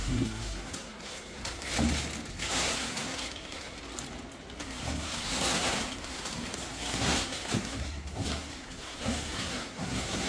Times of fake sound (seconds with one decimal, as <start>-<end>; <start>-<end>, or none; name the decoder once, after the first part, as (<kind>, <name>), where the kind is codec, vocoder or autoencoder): 0.0-1.7 (codec, SNAC); 2.3-3.8; 4.6-10.3